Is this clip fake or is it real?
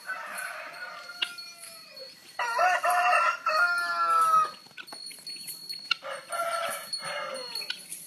real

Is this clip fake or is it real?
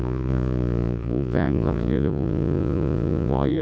fake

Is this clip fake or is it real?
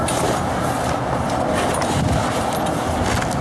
real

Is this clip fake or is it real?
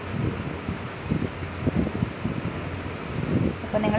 real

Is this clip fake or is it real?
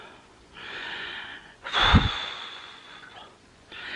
fake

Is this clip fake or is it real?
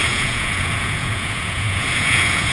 fake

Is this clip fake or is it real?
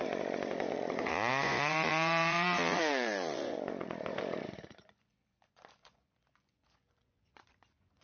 fake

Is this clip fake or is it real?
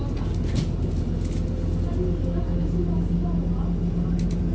real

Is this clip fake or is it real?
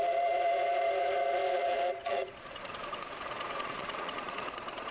fake